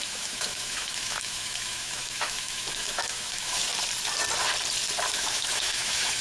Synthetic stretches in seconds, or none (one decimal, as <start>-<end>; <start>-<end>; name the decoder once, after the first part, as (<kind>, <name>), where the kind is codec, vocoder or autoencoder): 0.0-3.7 (autoencoder, DAC-VAE); 5.1-6.2